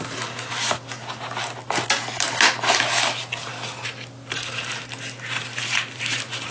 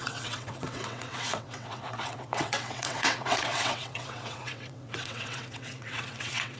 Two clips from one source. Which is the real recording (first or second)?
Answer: first